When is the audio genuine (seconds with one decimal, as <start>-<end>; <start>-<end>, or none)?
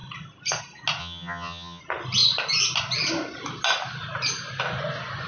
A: 0.0-1.0; 1.8-5.3